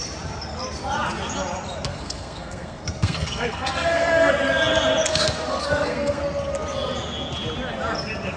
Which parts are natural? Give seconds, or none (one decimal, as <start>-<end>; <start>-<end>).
0.0-1.9; 4.3-5.1; 6.2-8.4